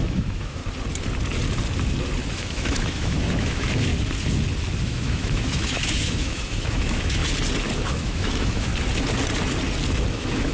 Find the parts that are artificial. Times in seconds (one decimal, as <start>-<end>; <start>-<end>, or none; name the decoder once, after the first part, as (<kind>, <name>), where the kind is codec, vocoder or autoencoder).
0.0-0.6 (autoencoder, DAC-VAE); 2.3-3.9; 4.8-7.2; 7.9-8.7; 10.1-10.5